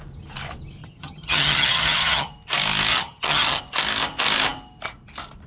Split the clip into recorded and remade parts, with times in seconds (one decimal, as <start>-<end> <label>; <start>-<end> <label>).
0.0-0.8 recorded; 0.8-2.3 remade; 2.3-2.9 recorded; 2.9-3.6 remade; 3.6-5.5 recorded